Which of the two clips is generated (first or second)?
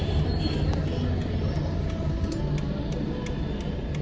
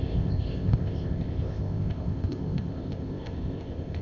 second